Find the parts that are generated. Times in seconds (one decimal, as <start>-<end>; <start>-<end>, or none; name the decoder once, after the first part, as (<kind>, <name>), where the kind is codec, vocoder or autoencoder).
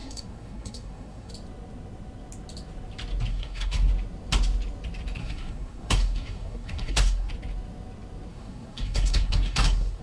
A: 0.0-1.3 (codec, SNAC); 3.3-3.9; 5.2-7.3; 8.3-10.0